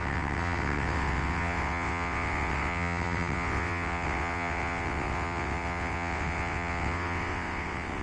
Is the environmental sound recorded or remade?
remade